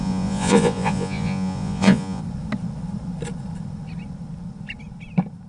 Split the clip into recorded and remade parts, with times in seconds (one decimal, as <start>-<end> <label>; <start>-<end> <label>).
0.0-2.2 remade; 2.2-5.5 recorded